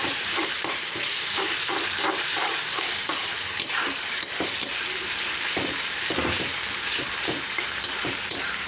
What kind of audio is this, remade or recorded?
remade